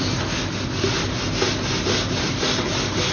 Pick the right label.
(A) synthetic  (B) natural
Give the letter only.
B